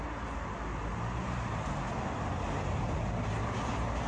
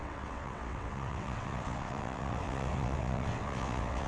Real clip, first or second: first